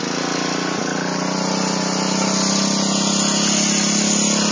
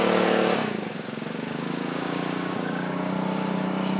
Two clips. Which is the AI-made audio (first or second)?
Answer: second